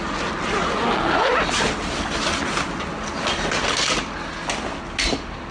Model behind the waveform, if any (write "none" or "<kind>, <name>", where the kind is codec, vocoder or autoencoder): none